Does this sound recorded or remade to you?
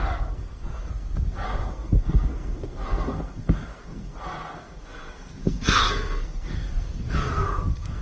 remade